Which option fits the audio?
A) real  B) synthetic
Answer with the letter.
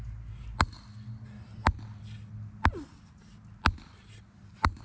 A